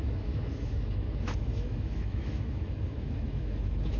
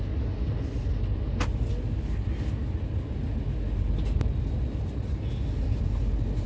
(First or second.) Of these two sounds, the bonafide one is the second